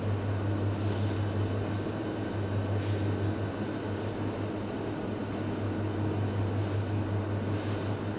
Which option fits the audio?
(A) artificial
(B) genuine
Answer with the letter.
B